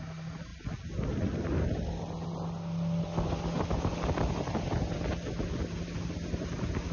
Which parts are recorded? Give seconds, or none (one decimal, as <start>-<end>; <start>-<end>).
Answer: 0.0-6.9